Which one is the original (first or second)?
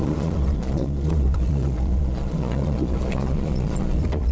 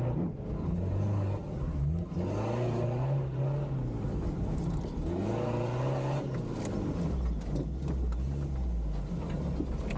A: second